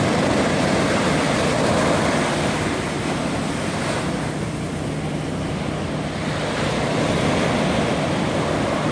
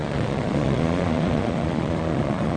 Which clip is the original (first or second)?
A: first